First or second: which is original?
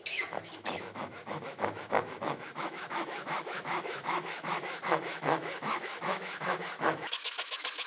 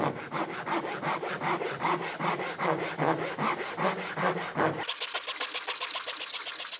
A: second